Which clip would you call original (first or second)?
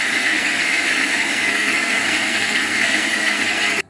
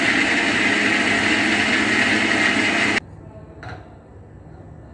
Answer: second